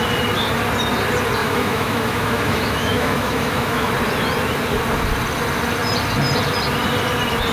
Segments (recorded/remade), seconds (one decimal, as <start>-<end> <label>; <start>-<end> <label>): 0.0-1.4 recorded; 1.4-3.9 remade; 3.9-7.5 recorded